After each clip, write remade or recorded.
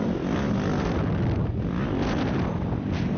recorded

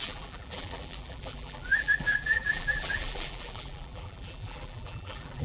remade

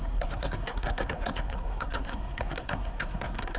remade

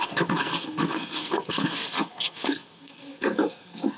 remade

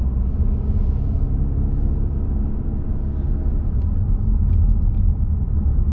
recorded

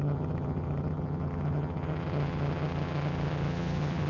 remade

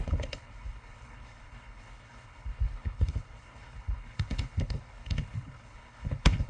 remade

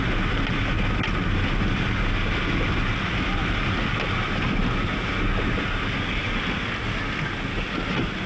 recorded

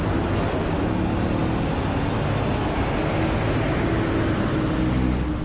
recorded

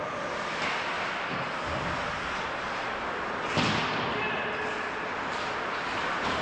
recorded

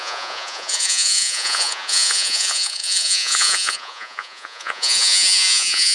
remade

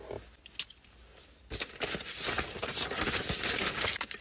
recorded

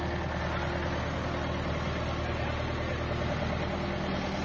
recorded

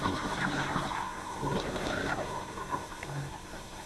remade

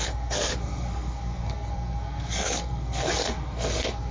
remade